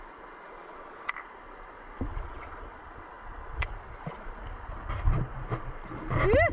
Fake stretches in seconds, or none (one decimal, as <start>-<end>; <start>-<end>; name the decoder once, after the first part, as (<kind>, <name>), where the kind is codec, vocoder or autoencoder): 0.4-1.1 (vocoder, Vocos); 2.1-4.4